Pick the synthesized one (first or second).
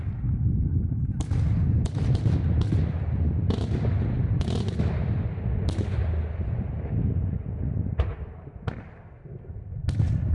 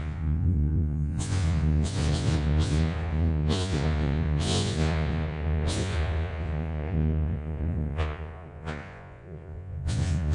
second